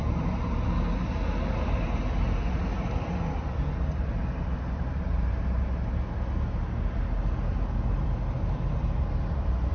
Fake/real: real